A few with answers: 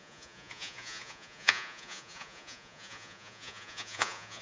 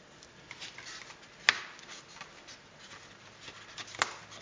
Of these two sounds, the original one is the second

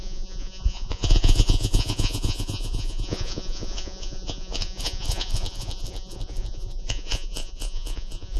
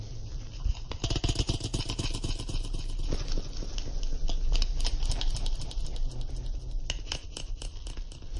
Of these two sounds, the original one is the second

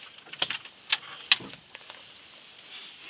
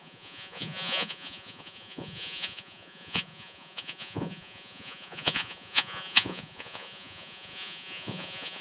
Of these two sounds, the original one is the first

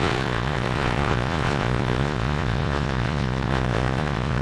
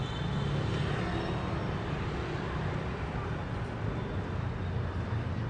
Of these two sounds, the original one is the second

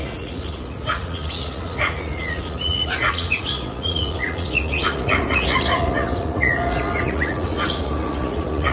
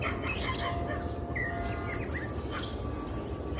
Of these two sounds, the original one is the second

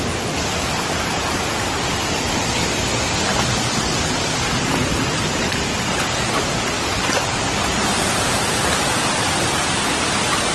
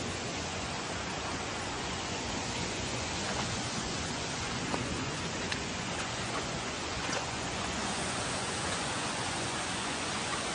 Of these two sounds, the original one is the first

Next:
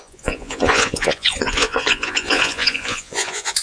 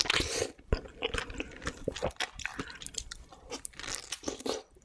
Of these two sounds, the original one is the second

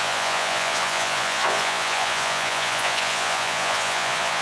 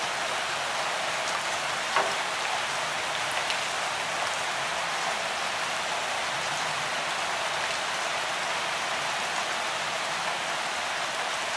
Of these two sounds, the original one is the second